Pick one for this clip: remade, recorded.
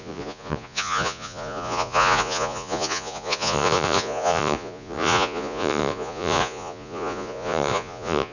remade